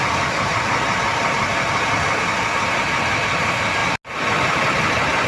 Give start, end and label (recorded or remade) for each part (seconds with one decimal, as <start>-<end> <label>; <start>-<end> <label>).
0.0-5.3 recorded